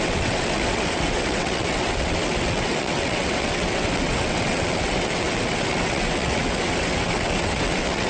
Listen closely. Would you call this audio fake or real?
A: fake